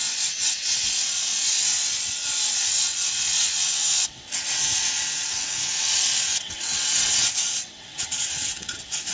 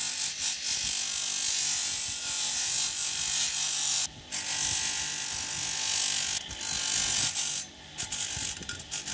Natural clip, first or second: second